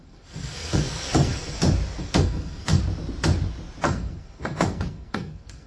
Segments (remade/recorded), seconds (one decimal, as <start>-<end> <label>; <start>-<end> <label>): 0.0-1.6 remade; 1.6-2.0 recorded; 2.0-2.8 remade; 2.8-3.8 recorded; 3.8-5.7 remade